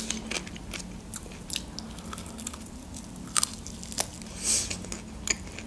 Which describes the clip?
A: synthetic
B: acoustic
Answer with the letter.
B